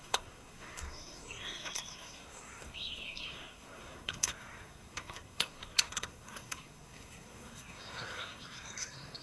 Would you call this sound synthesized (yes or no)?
yes